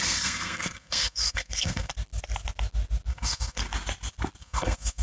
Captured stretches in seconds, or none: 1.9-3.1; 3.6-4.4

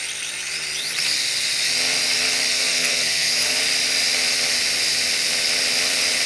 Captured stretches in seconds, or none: 0.0-2.5; 3.6-6.3

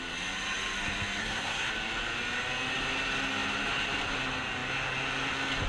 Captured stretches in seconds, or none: 0.0-1.2; 1.7-5.7

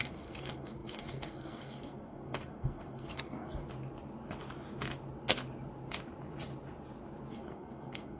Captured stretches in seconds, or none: 3.6-7.3

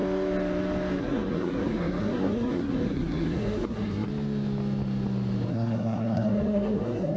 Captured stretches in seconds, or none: 0.0-1.0; 4.1-5.5